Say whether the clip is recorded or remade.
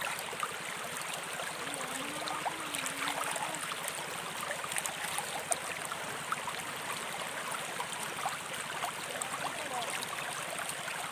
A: recorded